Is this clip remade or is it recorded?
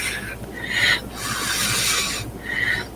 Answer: recorded